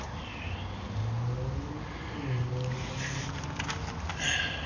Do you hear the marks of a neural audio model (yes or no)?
no